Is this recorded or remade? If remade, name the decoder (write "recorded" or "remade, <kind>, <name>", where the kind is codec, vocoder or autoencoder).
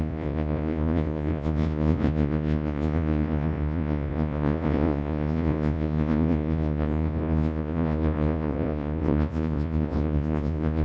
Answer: remade, vocoder, Vocos